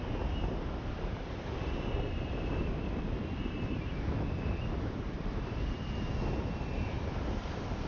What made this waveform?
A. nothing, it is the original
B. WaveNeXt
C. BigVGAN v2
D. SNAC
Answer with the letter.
A